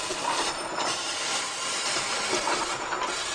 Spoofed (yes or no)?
yes